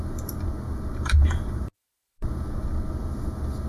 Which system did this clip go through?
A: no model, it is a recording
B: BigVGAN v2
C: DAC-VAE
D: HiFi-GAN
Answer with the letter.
B